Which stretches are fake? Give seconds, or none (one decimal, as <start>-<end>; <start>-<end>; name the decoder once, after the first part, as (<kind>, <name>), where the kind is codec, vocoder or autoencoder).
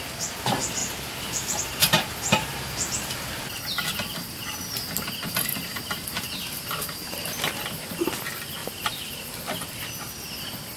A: 0.8-3.5 (vocoder, BigVGAN v2); 5.5-7.4; 8.6-9.7